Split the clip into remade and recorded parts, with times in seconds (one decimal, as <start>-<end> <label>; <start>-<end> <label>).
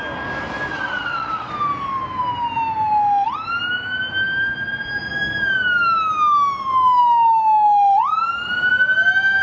0.0-0.7 recorded; 0.7-1.5 remade; 1.5-9.4 recorded